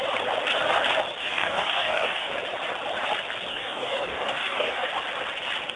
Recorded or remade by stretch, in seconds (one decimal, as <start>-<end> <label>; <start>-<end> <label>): 0.0-1.2 recorded; 1.2-2.3 remade; 2.3-3.5 recorded; 3.5-4.9 remade; 4.9-5.8 recorded